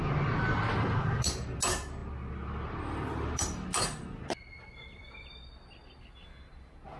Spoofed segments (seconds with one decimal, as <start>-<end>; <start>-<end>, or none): none